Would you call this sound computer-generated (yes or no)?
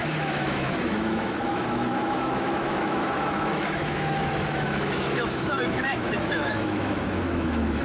yes